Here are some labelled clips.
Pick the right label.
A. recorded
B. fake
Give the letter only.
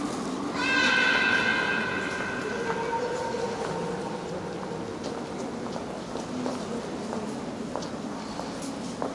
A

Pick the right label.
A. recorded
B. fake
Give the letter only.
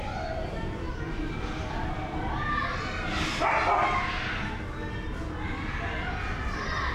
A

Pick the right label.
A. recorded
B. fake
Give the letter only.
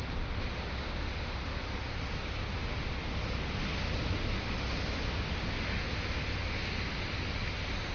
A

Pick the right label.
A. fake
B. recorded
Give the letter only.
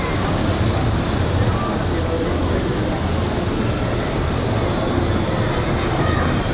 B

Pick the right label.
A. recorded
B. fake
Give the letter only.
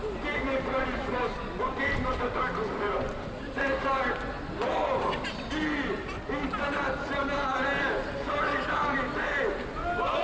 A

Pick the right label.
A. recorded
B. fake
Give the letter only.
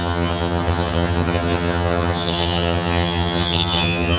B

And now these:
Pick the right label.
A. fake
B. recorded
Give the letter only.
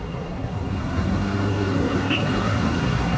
A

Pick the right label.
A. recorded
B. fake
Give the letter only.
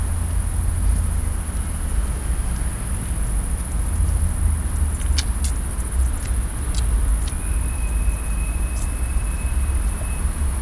A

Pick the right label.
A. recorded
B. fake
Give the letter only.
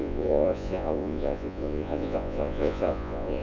B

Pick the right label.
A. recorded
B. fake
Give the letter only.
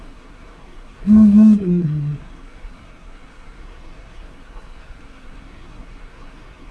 B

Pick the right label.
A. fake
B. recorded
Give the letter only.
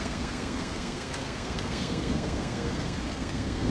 A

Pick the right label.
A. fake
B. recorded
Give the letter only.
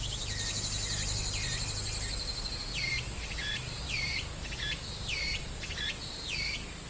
B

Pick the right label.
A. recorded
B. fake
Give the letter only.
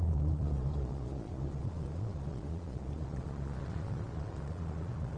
B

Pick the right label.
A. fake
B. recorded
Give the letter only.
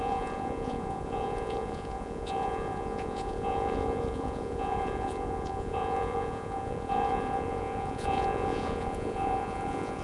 A